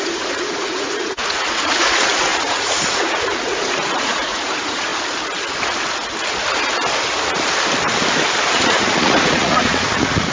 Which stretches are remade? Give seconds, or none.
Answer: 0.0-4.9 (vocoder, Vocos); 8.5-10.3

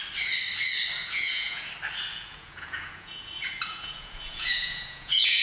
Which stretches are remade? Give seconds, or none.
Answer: 1.0-1.7 (vocoder, Vocos); 2.1-5.4

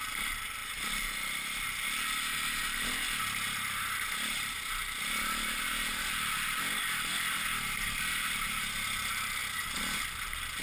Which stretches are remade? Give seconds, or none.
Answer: 0.6-1.1 (vocoder, BigVGAN v2)

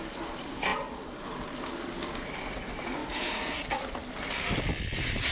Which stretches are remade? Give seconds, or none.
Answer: 3.0-3.9 (vocoder, BigVGAN v2)

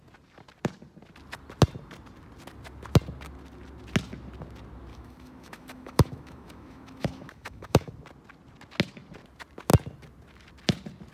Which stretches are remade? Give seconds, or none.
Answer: 4.9-7.9 (autoencoder, DAC-VAE)

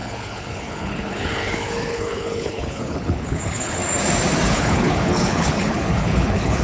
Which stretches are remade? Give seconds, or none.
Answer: 0.0-3.8 (codec, HILCodec); 4.5-6.6